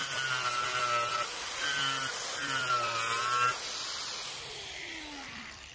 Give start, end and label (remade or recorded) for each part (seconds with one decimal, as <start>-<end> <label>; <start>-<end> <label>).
0.0-2.6 recorded; 2.6-3.2 remade; 3.2-5.7 recorded